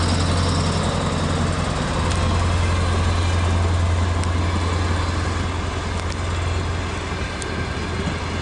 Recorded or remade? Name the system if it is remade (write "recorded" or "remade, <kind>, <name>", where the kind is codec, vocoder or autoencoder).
recorded